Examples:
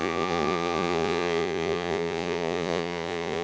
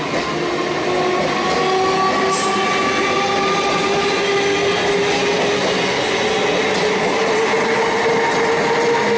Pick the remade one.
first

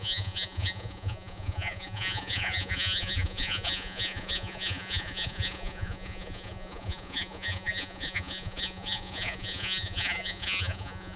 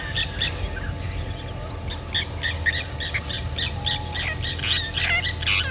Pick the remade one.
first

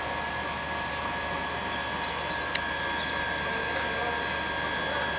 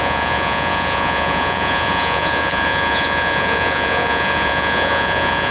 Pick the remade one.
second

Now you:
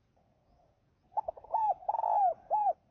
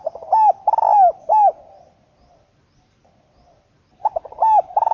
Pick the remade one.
first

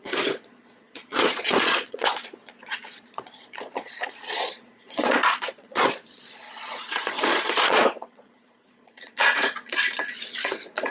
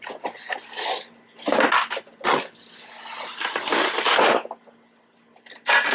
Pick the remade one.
first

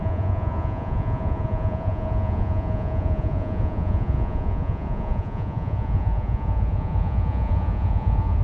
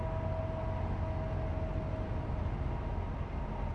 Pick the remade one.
first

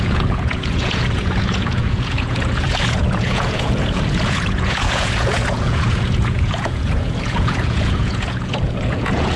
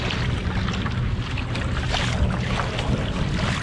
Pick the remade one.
first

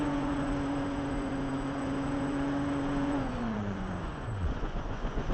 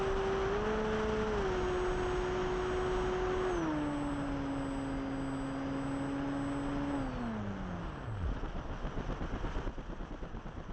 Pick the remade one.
first